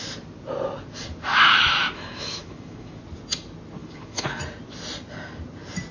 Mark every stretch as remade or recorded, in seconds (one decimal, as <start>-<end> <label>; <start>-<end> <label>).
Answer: 0.0-1.3 recorded; 1.3-3.0 remade; 3.0-3.8 recorded; 3.8-4.4 remade; 4.4-5.9 recorded